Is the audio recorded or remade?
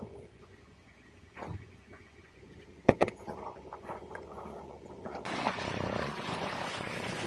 remade